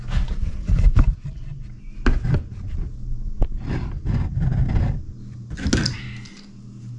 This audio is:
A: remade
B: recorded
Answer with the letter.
B